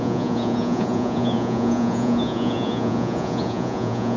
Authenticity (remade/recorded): remade